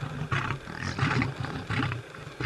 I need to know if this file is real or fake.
real